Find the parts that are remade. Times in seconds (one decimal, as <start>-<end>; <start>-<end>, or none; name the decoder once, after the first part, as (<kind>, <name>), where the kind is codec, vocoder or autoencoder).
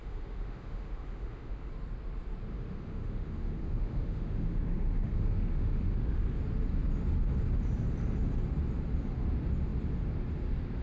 0.0-1.7 (autoencoder, DAC-VAE); 2.5-6.4